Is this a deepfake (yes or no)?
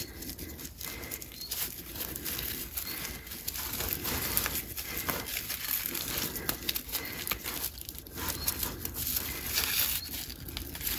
no